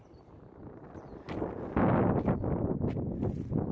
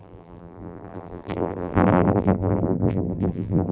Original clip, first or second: first